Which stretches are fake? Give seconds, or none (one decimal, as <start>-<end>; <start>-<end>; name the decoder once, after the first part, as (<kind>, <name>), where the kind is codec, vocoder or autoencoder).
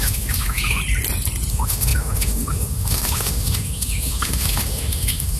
0.0-0.8 (autoencoder, DAC-VAE); 1.5-5.4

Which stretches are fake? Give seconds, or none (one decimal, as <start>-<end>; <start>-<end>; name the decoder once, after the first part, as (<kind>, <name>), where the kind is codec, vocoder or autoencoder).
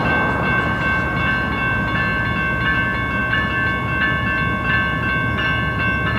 none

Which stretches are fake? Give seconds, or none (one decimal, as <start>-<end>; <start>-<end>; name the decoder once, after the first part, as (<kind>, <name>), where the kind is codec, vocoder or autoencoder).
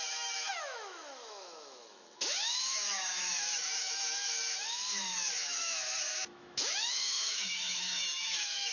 0.0-8.7 (autoencoder, DAC-VAE)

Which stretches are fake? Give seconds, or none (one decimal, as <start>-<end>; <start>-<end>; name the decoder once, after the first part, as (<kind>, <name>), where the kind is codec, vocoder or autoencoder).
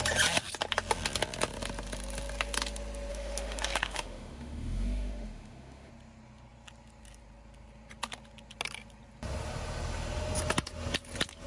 3.1-5.9 (autoencoder, DAC-VAE)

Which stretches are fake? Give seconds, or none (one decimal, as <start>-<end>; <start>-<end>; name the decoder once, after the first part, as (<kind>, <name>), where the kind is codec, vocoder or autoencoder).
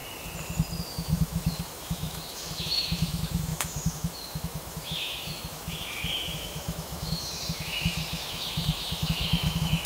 0.9-9.9 (autoencoder, DAC-VAE)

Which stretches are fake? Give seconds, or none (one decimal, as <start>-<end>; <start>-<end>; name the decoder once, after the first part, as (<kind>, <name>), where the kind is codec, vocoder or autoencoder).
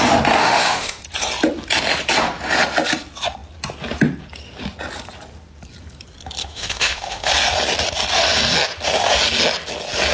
0.4-1.0 (autoencoder, DAC-VAE); 6.4-7.3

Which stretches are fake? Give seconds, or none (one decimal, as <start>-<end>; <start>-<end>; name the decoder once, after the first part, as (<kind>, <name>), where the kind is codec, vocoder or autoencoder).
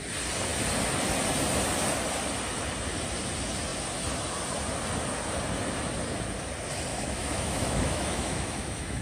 6.9-9.0 (autoencoder, DAC-VAE)